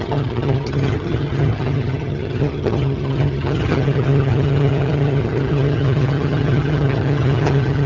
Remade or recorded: remade